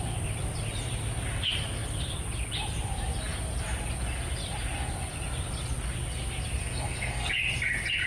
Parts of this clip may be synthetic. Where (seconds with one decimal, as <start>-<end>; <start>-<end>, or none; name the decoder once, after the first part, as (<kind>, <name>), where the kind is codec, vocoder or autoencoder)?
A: 6.6-7.3 (codec, SNAC)